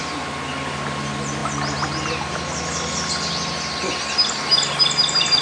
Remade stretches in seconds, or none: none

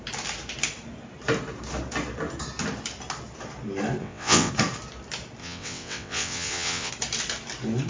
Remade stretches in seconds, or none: 4.0-4.5 (vocoder, WaveNeXt); 5.4-6.9

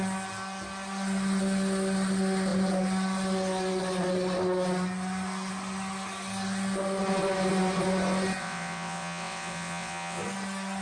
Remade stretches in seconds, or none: 8.4-10.2 (vocoder, WaveNeXt)

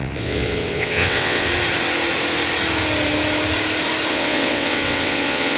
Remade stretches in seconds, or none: 0.0-1.5 (vocoder, WaveNeXt); 4.1-5.6

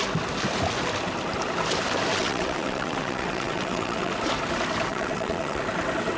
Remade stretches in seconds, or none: 2.1-4.1 (vocoder, WaveNeXt); 4.9-5.6

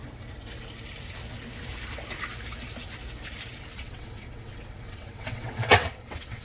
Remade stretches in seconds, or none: 3.8-6.4 (vocoder, WaveNeXt)

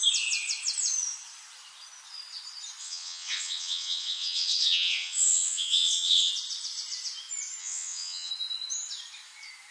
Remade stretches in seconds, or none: 2.8-6.3 (vocoder, WaveNeXt); 7.6-8.3